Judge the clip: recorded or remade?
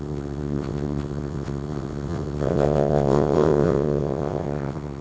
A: remade